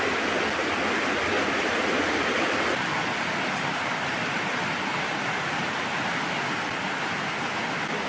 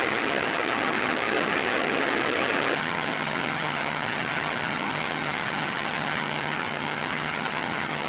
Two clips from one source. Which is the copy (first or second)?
second